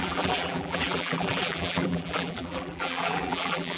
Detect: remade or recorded remade